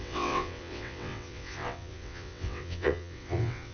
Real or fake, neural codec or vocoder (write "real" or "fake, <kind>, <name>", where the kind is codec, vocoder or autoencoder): fake, vocoder, WaveNeXt